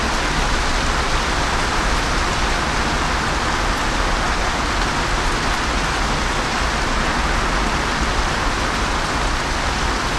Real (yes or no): yes